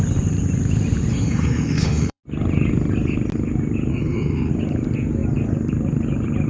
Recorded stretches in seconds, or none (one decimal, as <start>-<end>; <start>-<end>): 0.0-1.1; 2.2-3.9; 4.5-6.5